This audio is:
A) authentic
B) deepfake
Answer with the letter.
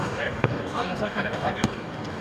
B